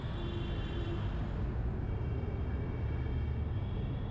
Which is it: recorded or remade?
recorded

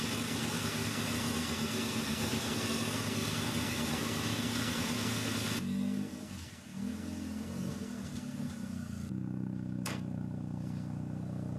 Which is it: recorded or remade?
remade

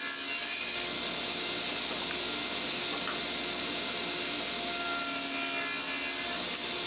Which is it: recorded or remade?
recorded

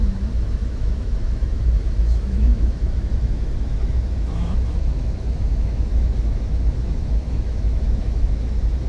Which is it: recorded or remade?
remade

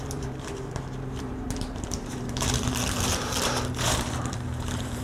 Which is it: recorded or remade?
remade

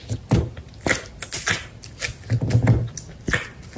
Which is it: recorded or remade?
recorded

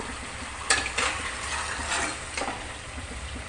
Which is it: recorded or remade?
remade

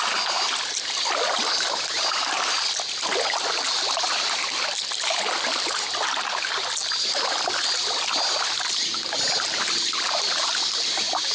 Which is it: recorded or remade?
recorded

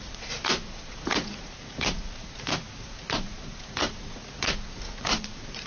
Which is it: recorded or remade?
remade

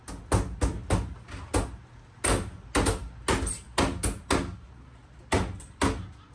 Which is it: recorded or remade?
recorded